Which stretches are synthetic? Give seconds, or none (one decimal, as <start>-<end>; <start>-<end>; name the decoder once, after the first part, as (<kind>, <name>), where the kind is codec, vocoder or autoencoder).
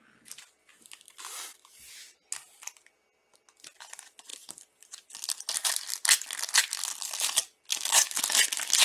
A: 7.7-8.2 (codec, DAC)